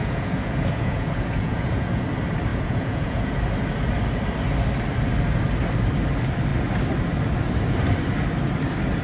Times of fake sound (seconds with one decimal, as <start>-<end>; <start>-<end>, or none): 0.0-2.0; 2.5-3.4